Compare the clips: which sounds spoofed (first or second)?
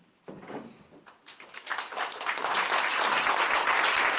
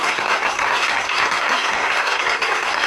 second